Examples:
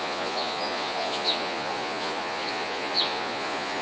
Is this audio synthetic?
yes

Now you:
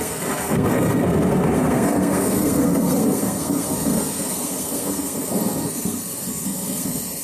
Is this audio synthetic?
yes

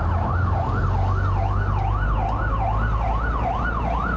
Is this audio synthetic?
no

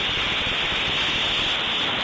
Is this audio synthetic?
no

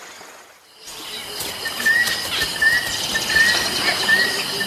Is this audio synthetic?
no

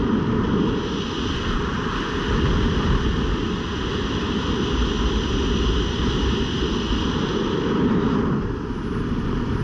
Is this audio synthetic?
no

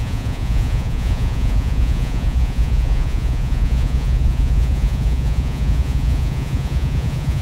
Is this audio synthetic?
yes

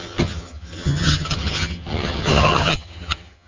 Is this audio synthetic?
yes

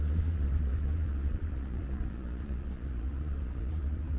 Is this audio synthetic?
yes